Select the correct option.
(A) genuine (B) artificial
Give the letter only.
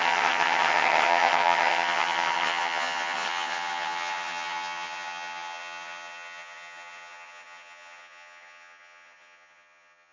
B